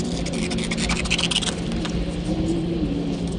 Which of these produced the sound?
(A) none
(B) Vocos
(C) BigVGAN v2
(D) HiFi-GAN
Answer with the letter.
A